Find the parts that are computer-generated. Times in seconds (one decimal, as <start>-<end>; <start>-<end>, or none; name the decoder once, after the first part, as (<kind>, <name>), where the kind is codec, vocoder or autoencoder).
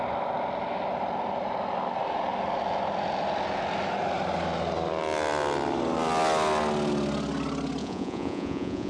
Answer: 7.8-8.9 (vocoder, Vocos)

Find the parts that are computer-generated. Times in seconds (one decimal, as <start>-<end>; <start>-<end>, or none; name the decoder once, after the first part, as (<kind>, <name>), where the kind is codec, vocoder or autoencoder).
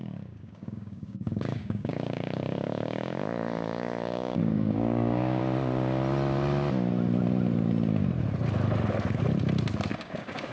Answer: 0.0-5.4 (codec, DAC); 10.0-10.5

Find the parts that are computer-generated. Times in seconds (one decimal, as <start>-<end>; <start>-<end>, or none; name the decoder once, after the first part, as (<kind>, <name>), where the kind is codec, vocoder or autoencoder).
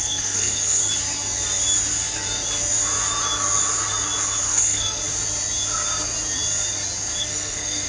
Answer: 0.0-0.8 (codec, SNAC); 4.4-5.0; 7.2-7.9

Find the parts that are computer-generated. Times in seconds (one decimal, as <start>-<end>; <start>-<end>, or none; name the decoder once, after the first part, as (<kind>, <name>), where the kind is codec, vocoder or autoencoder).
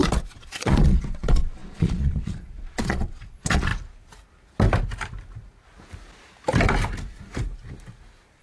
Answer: 0.0-3.7 (vocoder, Vocos)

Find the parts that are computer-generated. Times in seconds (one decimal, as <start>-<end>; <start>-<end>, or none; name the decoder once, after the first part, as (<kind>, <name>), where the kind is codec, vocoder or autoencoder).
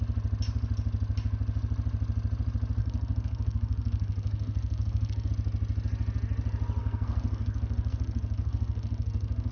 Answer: 2.8-5.3 (codec, SNAC); 6.8-9.5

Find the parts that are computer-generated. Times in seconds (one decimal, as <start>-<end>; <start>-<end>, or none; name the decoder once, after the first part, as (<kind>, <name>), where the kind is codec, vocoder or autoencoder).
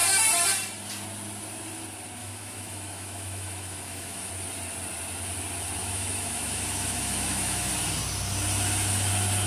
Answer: 2.2-4.3 (autoencoder, DAC-VAE); 5.8-7.7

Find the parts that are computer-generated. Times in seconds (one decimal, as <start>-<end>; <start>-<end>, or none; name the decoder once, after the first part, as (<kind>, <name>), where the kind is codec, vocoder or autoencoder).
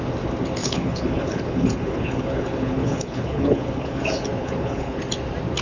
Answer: 0.6-4.0 (codec, HILCodec); 4.4-5.0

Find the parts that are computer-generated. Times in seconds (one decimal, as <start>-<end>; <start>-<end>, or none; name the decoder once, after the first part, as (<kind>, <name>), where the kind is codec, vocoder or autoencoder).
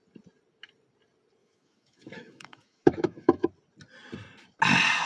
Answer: 1.4-3.5 (autoencoder, DAC-VAE)